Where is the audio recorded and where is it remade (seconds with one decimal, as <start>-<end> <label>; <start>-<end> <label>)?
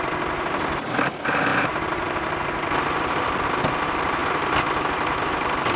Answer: 0.0-5.8 recorded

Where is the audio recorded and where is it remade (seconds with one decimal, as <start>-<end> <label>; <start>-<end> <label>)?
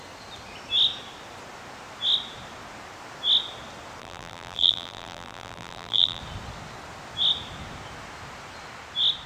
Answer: 0.0-4.0 recorded; 4.0-6.2 remade; 6.2-9.3 recorded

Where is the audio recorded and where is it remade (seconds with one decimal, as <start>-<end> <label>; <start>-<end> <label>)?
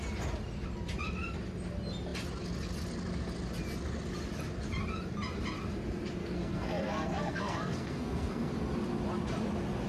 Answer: 0.0-6.2 recorded; 6.2-8.5 remade; 8.5-9.9 recorded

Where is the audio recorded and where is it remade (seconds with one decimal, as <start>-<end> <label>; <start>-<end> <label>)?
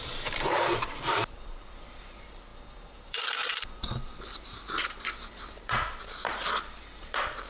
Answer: 0.0-7.5 remade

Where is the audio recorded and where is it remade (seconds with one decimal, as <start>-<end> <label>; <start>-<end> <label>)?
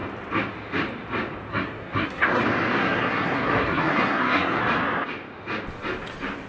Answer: 0.0-1.5 recorded; 1.5-2.4 remade; 2.4-2.8 recorded; 2.8-4.6 remade; 4.6-6.5 recorded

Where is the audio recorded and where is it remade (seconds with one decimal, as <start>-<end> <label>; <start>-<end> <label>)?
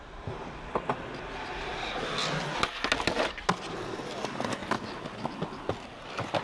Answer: 0.0-6.4 recorded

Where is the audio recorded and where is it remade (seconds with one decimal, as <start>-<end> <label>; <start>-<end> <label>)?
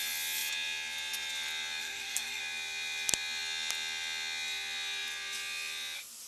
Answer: 0.0-1.8 recorded; 1.8-2.4 remade; 2.4-6.3 recorded